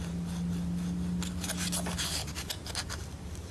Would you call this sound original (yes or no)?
yes